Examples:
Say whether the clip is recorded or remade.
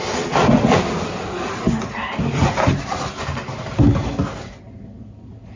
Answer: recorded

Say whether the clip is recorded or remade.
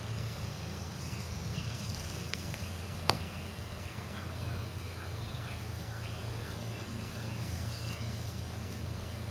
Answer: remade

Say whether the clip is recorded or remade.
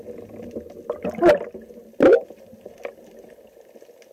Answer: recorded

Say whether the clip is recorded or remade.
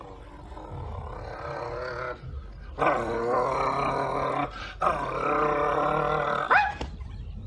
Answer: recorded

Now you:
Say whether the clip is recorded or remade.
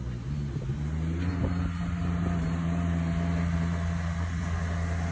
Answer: recorded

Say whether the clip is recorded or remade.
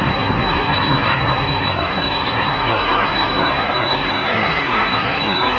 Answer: remade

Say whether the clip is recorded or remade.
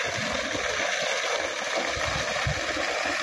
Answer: recorded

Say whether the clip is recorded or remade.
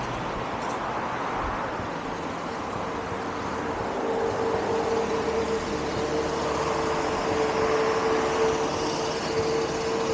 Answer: recorded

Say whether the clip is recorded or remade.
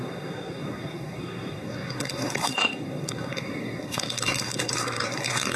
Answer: remade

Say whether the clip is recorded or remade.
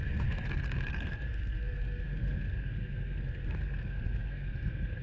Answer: remade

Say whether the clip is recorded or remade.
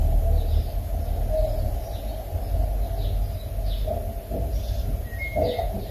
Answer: recorded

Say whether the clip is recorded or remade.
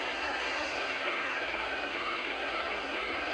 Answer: remade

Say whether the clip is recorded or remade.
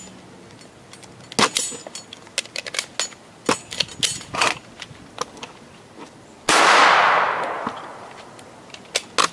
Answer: recorded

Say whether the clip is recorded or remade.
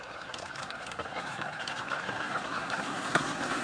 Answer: remade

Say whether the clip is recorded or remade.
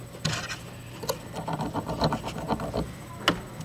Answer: recorded